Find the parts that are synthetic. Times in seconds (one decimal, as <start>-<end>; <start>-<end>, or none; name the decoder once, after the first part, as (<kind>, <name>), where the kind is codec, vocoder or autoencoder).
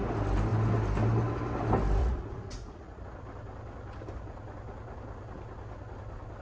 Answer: 2.0-3.0 (vocoder, Vocos)